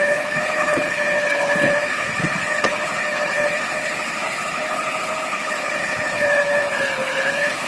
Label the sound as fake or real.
fake